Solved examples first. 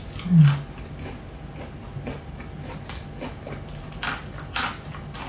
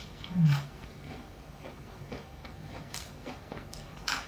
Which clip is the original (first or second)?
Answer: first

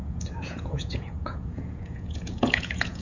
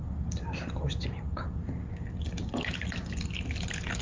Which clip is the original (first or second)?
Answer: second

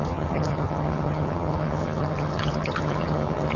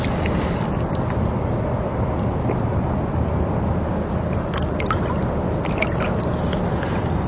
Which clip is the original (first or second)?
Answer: second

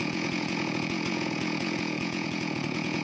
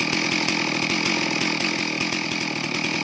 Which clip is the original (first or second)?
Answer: second